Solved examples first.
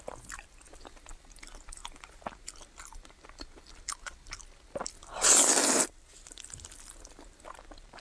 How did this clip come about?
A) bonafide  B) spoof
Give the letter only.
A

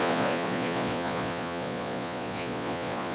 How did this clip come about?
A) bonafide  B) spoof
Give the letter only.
B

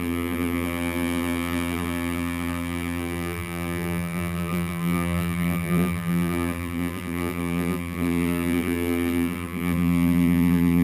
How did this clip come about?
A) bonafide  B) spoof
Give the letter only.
B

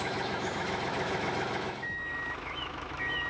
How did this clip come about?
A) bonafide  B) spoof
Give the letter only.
B